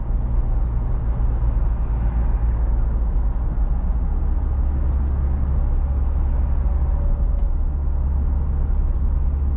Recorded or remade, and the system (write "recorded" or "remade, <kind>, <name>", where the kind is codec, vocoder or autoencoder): recorded